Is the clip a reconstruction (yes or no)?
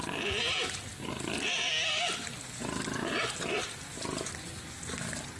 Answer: no